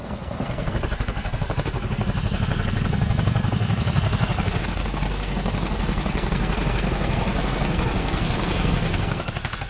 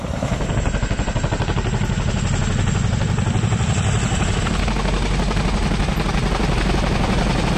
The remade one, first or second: first